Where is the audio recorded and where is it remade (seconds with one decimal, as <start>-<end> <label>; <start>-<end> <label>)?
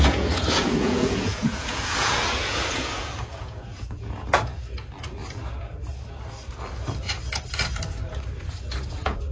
0.0-4.5 remade; 4.5-8.9 recorded; 8.9-9.3 remade